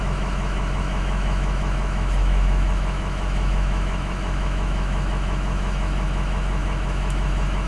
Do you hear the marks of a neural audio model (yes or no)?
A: yes